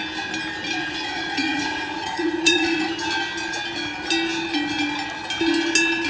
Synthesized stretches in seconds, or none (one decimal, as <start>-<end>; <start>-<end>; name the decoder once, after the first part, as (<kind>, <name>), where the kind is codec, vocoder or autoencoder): 0.8-2.9 (vocoder, Vocos)